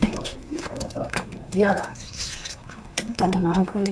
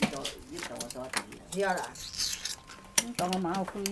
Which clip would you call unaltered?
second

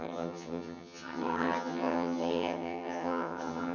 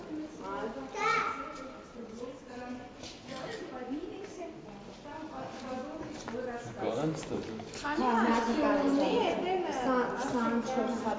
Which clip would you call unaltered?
second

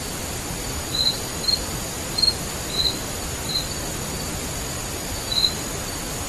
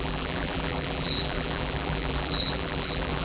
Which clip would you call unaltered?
first